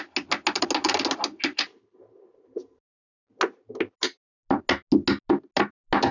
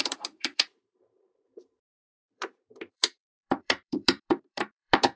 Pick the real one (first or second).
first